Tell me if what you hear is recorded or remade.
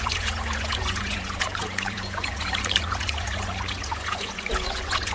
remade